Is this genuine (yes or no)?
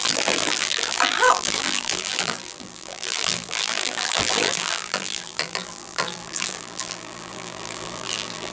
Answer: no